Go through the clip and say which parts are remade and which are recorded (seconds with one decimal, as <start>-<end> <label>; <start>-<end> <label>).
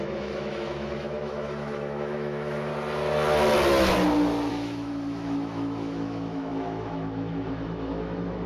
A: 0.0-2.7 remade; 2.7-4.5 recorded; 4.5-8.5 remade